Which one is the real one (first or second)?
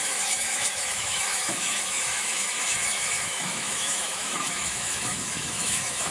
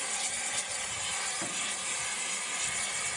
second